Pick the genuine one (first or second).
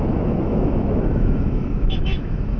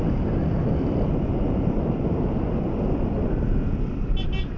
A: second